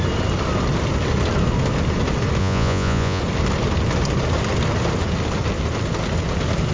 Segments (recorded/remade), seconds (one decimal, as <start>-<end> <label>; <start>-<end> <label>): 0.0-2.4 recorded; 2.4-3.2 remade; 3.2-6.7 recorded

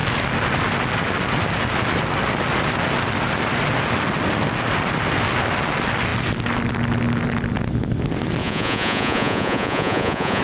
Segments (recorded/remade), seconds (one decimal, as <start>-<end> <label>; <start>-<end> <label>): 0.0-8.4 recorded; 8.4-10.4 remade